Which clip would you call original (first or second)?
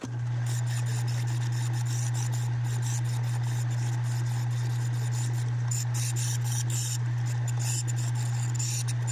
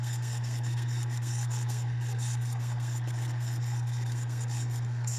first